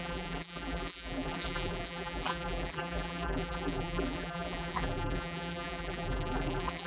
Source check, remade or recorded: remade